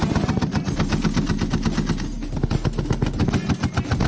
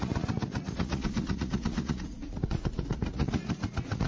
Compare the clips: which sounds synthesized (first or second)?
second